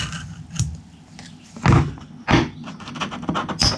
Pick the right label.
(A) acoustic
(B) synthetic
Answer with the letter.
A